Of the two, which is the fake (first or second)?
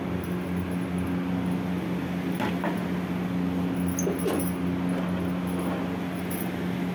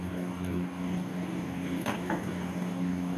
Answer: second